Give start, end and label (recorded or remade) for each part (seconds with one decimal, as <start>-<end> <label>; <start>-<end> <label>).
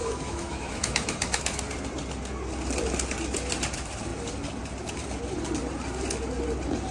0.0-1.6 remade; 1.6-6.9 recorded